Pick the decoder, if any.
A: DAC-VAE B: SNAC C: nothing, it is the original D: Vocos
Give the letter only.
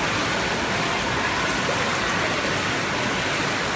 C